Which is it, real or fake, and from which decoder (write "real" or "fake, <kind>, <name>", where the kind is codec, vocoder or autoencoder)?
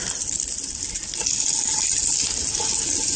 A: real